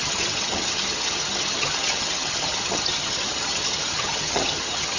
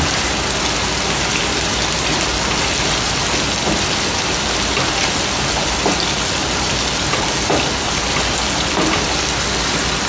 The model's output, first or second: first